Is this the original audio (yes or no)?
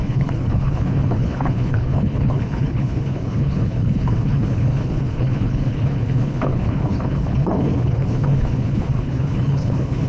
no